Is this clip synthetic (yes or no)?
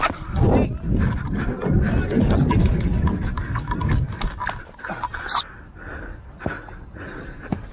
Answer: no